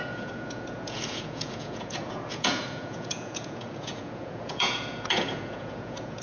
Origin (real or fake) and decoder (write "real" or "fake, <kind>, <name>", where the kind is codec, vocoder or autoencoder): fake, vocoder, Vocos